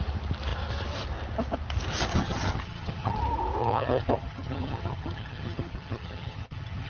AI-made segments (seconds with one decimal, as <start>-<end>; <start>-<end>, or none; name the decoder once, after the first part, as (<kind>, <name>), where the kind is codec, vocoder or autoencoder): 2.1-3.2 (vocoder, HiFi-GAN); 3.6-6.9

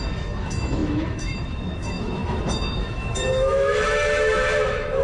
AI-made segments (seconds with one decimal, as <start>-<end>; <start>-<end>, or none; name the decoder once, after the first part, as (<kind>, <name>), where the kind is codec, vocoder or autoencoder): 0.0-5.0 (autoencoder, DAC-VAE)

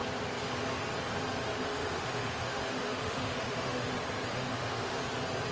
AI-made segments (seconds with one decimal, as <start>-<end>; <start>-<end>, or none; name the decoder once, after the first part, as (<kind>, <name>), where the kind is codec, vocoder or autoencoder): 1.5-3.9 (autoencoder, DAC-VAE); 4.3-5.0

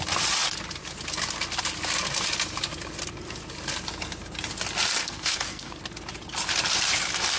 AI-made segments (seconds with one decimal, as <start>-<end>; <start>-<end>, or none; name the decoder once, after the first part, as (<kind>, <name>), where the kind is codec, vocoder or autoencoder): 5.0-5.8 (codec, SNAC)